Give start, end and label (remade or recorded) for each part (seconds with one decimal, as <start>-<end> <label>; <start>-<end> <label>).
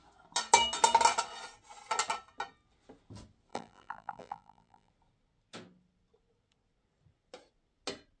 0.0-3.5 recorded; 3.5-4.9 remade; 4.9-8.2 recorded